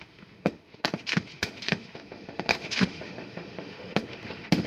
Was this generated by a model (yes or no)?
yes